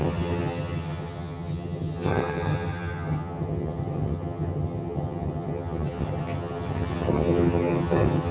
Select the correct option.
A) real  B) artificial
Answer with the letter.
B